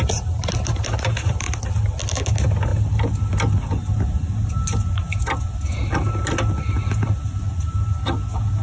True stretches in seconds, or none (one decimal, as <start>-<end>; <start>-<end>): 0.0-8.6